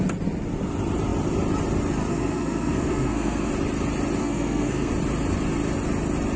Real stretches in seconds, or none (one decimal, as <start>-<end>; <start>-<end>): 0.0-2.1; 3.5-4.2; 4.9-6.4